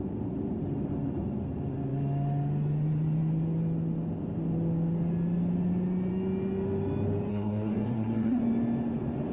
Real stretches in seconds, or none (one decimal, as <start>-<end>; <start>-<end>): 0.0-7.3; 8.4-9.3